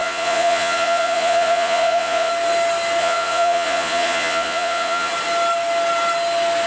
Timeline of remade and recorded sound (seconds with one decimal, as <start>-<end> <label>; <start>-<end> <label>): 0.0-2.3 remade; 2.3-3.0 recorded; 3.0-5.1 remade; 5.1-6.7 recorded